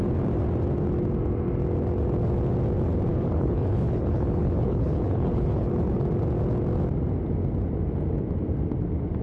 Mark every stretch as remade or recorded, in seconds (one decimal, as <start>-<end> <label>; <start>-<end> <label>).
0.0-3.1 recorded; 3.1-5.7 remade; 5.7-9.2 recorded